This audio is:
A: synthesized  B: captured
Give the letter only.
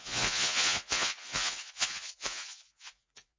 A